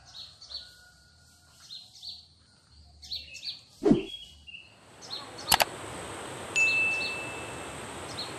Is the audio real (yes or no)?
yes